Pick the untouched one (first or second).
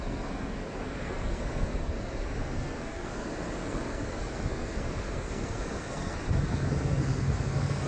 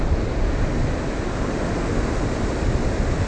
second